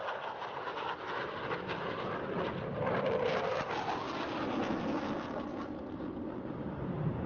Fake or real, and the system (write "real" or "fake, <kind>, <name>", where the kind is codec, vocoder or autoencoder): real